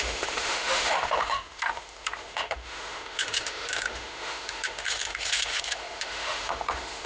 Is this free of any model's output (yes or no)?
no